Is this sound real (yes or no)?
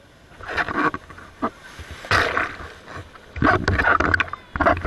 yes